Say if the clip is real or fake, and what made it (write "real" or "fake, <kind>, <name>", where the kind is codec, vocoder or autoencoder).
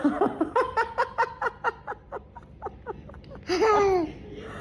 real